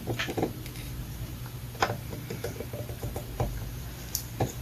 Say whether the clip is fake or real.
fake